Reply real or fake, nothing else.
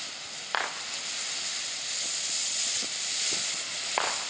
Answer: real